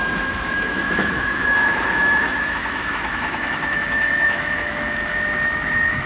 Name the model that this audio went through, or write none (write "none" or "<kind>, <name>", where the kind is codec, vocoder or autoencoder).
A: autoencoder, DAC-VAE